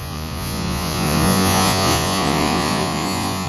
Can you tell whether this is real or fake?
fake